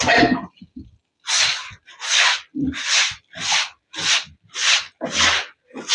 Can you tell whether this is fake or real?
real